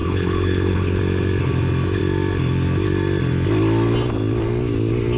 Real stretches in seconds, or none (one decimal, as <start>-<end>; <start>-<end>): 1.0-5.2